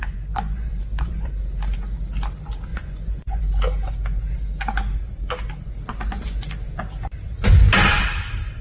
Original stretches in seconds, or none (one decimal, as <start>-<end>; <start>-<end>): 1.4-2.7; 3.4-8.6